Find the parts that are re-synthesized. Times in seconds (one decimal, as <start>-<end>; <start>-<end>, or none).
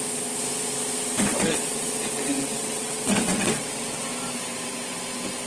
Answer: 1.3-4.1